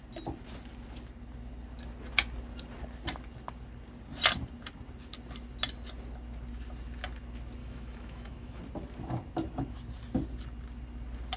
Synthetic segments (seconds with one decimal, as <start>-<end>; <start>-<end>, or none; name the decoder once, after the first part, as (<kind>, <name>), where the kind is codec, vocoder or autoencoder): 7.6-8.6 (autoencoder, DAC-VAE)